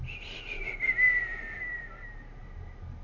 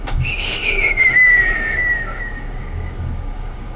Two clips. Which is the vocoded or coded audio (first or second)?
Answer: second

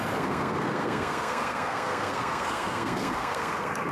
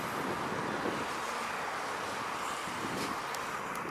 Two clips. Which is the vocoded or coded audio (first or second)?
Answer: first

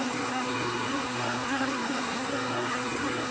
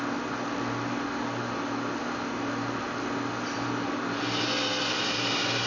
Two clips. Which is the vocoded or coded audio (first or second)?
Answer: first